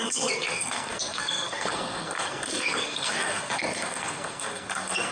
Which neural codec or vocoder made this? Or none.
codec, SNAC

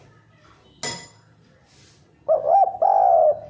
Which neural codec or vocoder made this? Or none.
none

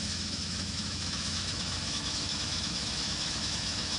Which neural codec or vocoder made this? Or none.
autoencoder, DAC-VAE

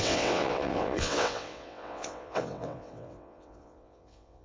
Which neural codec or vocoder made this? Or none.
vocoder, WaveNeXt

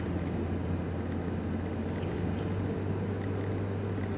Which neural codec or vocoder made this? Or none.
none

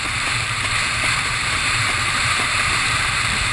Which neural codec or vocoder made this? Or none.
vocoder, BigVGAN v2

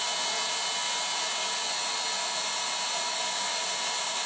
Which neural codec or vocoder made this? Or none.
none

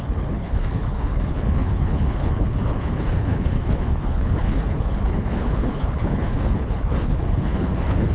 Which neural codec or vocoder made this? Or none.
codec, HILCodec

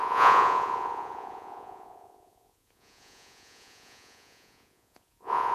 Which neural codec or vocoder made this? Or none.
vocoder, Vocos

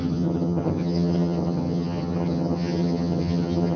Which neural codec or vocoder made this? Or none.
vocoder, HiFi-GAN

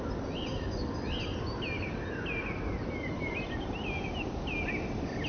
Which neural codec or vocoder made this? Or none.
none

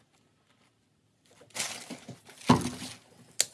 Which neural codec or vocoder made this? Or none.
none